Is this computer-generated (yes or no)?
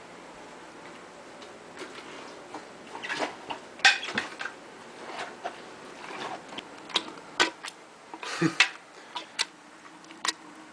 no